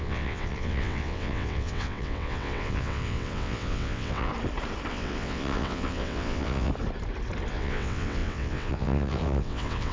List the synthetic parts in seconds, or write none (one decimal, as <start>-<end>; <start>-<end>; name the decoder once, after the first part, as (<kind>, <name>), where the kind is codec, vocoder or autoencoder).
0.0-4.3 (vocoder, WaveNeXt); 4.9-6.7; 7.5-9.9